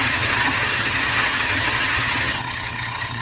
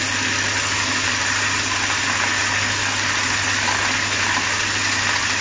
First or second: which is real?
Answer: second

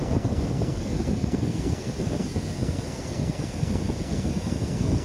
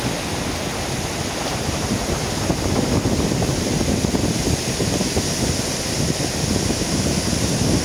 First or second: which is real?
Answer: second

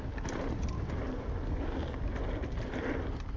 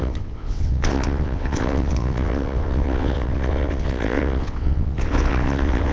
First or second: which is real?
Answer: first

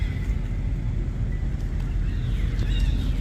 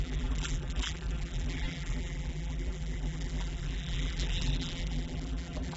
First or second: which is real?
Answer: first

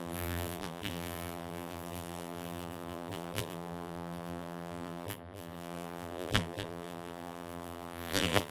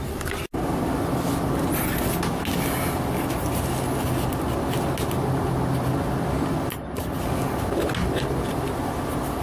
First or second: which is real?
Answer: second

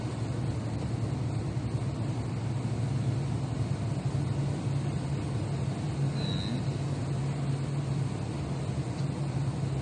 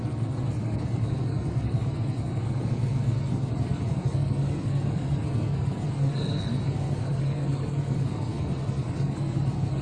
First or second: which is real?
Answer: first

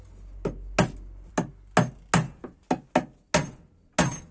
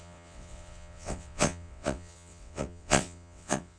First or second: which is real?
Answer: first